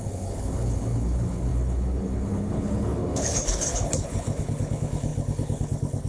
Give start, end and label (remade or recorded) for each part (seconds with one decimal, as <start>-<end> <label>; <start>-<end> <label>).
0.0-6.1 remade